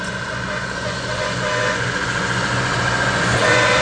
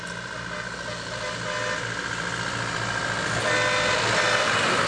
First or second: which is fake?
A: first